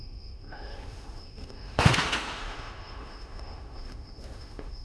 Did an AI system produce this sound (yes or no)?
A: yes